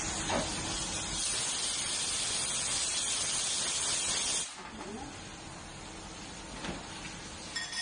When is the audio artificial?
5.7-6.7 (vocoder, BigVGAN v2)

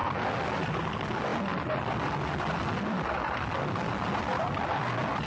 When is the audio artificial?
none

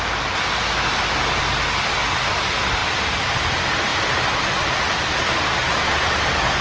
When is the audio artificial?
2.8-3.3 (vocoder, BigVGAN v2); 3.9-5.2

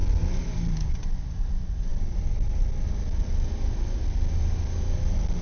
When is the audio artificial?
0.7-1.9 (vocoder, BigVGAN v2); 3.5-4.0; 5.0-5.4

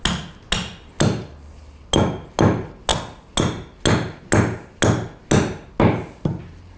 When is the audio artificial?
none

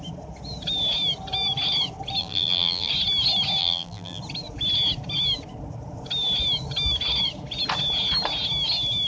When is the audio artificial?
2.2-2.9 (vocoder, BigVGAN v2); 3.6-4.2

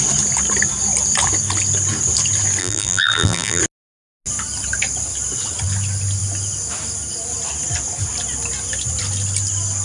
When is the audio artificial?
2.6-3.6 (vocoder, BigVGAN v2)

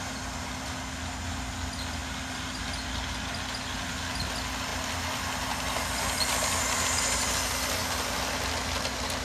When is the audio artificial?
none